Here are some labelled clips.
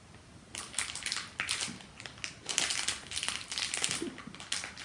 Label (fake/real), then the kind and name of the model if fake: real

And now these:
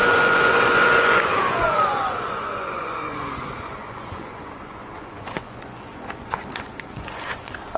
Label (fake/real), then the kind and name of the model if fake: fake, vocoder, Vocos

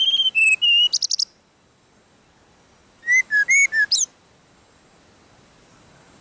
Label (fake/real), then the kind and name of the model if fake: real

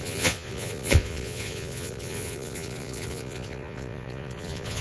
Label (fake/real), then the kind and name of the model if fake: fake, vocoder, Vocos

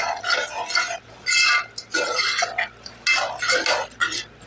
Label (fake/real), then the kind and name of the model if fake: real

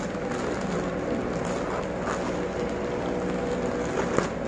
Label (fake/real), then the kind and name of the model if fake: real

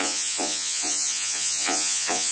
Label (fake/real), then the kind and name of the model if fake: fake, vocoder, Vocos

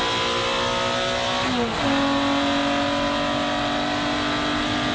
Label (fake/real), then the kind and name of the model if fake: real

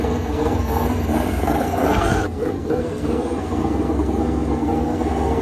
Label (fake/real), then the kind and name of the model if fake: fake, codec, SNAC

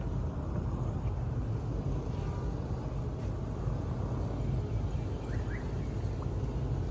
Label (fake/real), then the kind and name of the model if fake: real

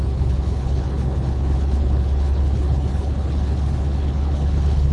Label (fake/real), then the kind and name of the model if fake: fake, codec, HILCodec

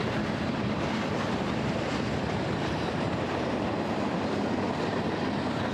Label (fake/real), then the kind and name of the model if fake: fake, vocoder, BigVGAN v2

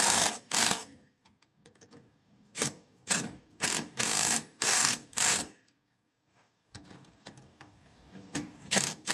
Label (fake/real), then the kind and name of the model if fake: fake, codec, DAC